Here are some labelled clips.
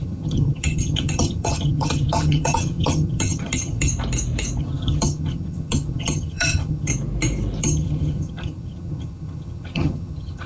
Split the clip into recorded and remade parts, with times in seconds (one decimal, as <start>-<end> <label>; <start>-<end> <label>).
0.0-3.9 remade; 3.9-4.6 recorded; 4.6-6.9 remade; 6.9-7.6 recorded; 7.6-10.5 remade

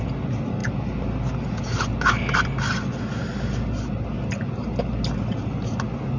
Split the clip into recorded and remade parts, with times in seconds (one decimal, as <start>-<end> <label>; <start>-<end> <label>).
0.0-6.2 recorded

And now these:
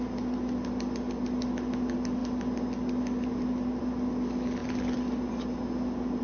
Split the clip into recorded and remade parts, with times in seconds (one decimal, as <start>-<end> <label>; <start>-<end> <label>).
0.0-6.2 recorded

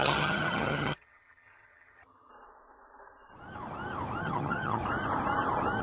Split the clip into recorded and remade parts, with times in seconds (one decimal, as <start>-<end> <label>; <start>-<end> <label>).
0.0-2.3 remade; 2.3-4.2 recorded; 4.2-4.8 remade; 4.8-5.8 recorded

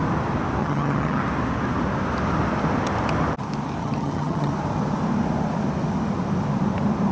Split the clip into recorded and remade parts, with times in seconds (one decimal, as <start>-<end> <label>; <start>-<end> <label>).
0.0-0.6 recorded; 0.6-1.2 remade; 1.2-3.8 recorded; 3.8-4.5 remade; 4.5-7.1 recorded

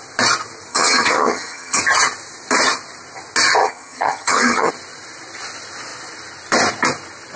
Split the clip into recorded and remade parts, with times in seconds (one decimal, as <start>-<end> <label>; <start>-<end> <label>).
0.0-0.7 recorded; 0.7-1.8 remade; 1.8-3.6 recorded; 3.6-4.7 remade; 4.7-7.4 recorded

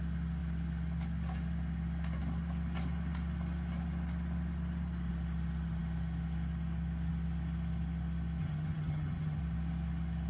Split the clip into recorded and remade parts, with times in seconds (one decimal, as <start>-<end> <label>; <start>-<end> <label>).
0.0-8.4 recorded; 8.4-9.4 remade; 9.4-10.3 recorded

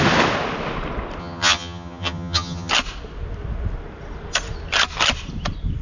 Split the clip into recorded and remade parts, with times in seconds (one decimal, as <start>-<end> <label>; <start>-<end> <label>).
0.0-1.2 recorded; 1.2-2.7 remade; 2.7-5.8 recorded